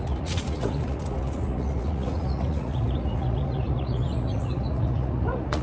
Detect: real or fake fake